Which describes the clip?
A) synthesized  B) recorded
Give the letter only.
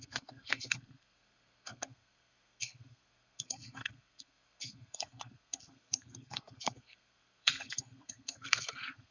A